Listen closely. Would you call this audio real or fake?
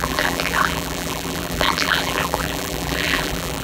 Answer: fake